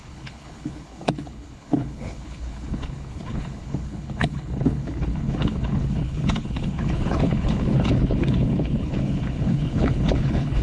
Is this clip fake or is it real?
fake